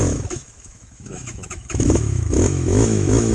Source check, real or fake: fake